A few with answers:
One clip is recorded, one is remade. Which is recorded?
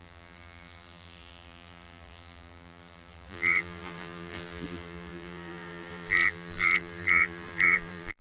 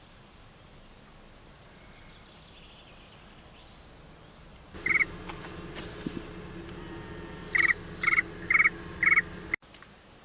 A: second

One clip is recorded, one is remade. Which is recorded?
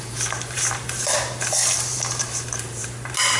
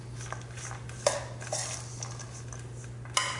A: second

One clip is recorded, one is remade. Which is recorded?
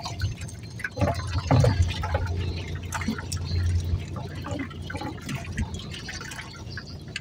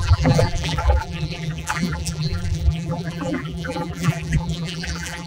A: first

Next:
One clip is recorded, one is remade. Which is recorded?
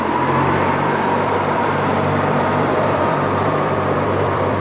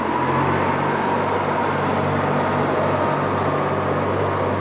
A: second